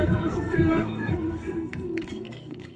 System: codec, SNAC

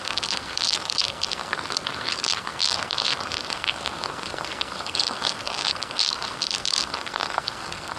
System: codec, SNAC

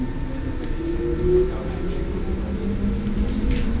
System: none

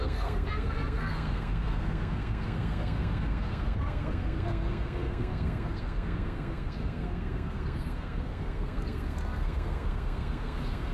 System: codec, SNAC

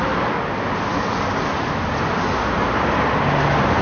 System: none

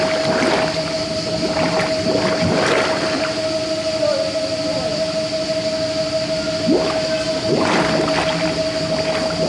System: none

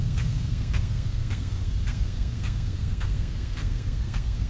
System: codec, SNAC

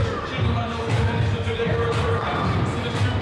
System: none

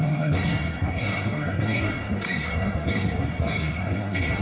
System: codec, SNAC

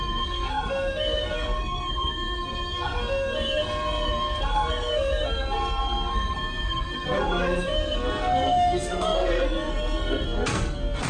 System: codec, SNAC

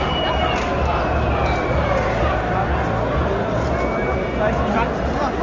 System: none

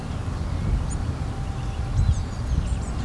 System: none